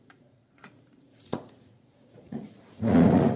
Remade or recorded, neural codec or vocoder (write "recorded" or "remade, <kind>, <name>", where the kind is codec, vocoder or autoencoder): remade, vocoder, Vocos